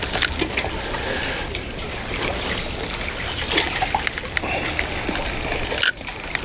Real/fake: real